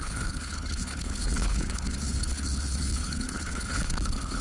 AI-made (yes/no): yes